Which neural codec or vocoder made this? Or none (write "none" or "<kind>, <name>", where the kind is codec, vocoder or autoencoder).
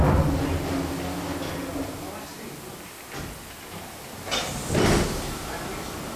none